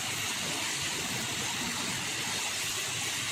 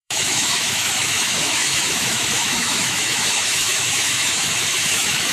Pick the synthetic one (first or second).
second